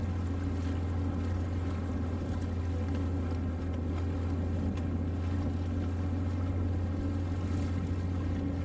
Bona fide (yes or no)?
yes